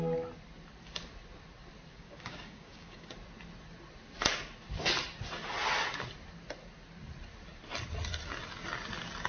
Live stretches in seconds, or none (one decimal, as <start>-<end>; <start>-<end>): 0.0-1.9; 3.1-9.3